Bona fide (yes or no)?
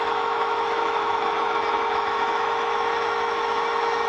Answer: no